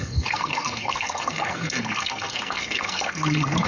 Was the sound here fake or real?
fake